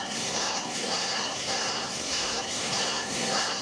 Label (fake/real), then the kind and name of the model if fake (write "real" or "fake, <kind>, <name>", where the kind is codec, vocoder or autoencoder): fake, codec, SNAC